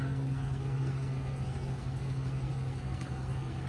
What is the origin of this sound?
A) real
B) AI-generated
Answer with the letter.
B